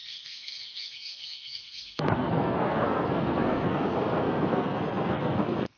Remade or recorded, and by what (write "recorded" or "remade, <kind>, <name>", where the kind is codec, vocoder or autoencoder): remade, codec, SNAC